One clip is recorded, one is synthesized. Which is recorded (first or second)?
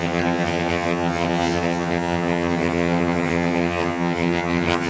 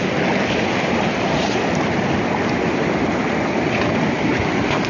second